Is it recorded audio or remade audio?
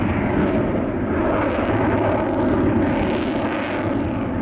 recorded